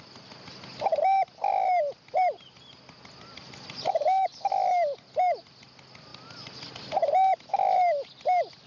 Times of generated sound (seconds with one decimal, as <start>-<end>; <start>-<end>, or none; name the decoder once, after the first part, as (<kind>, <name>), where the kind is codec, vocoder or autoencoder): none